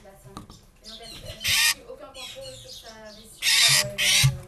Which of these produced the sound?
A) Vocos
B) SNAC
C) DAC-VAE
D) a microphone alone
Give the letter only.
D